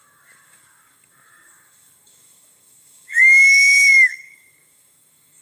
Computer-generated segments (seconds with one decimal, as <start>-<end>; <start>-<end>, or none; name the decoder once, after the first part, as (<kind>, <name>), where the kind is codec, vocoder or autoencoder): 0.0-5.4 (codec, DAC)